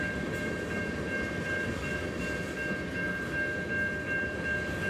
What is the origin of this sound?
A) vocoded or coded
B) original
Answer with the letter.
B